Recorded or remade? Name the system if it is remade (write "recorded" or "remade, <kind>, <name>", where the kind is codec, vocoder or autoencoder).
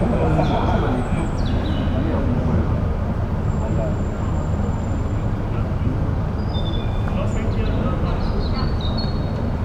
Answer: recorded